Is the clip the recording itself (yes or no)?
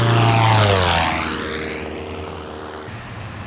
yes